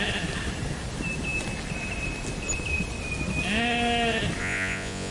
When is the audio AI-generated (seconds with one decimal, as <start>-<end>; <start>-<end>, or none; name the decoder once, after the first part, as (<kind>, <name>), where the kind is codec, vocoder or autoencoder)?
4.4-5.1 (vocoder, Vocos)